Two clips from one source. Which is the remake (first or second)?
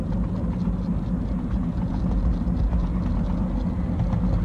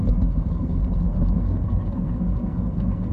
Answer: second